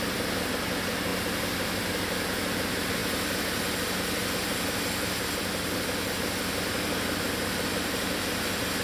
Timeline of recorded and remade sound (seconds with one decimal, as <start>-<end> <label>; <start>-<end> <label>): 0.0-8.8 recorded